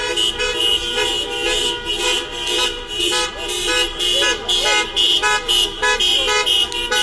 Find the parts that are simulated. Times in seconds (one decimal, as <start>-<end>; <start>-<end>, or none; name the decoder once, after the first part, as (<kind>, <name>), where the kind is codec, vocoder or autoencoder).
none

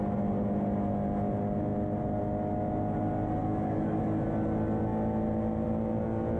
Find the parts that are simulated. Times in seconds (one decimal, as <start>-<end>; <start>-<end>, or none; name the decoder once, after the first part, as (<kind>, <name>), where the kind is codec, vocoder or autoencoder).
3.4-4.0 (codec, DAC)